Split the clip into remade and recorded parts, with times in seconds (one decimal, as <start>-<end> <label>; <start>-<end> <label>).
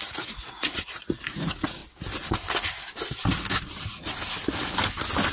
0.0-1.8 remade; 1.8-5.3 recorded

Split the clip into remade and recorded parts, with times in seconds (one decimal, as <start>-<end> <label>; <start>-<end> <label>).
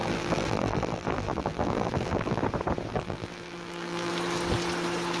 0.0-2.4 remade; 2.4-2.9 recorded; 2.9-4.1 remade; 4.1-5.2 recorded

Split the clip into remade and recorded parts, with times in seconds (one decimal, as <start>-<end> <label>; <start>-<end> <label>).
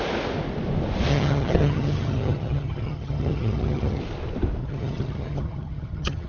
0.0-1.1 recorded; 1.1-4.0 remade; 4.0-4.6 recorded; 4.6-6.3 remade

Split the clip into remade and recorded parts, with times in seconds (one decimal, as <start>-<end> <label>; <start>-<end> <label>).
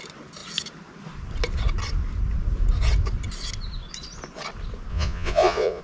0.0-4.9 recorded; 4.9-5.8 remade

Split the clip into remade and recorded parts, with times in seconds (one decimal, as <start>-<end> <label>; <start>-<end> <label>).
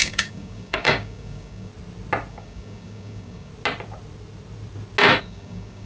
0.0-1.7 remade; 1.7-2.3 recorded; 2.3-3.5 remade; 3.5-5.2 recorded; 5.2-5.9 remade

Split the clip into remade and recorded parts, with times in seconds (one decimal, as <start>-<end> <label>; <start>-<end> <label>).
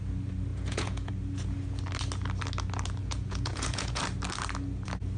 0.0-0.5 recorded; 0.5-1.1 remade; 1.1-3.0 recorded; 3.0-4.0 remade; 4.0-5.2 recorded